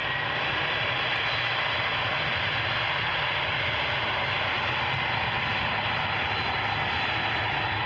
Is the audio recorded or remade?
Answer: recorded